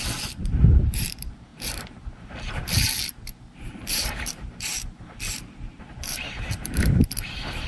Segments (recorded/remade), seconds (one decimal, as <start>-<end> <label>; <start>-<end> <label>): 0.0-7.7 remade